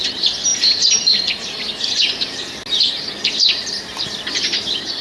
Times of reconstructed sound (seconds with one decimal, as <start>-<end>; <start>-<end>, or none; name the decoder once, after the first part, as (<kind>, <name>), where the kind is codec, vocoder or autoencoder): none